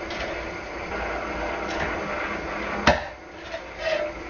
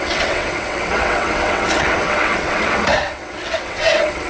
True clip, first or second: first